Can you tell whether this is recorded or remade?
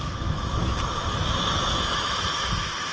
remade